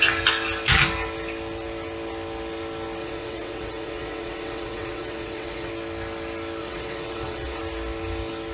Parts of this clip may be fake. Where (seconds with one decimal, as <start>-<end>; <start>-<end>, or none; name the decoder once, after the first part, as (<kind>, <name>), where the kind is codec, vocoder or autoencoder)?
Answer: 3.0-5.7 (vocoder, WaveNeXt); 6.6-7.6